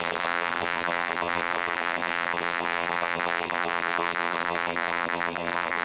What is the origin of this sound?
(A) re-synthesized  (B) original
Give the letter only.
A